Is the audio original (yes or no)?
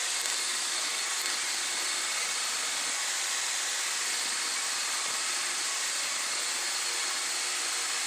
yes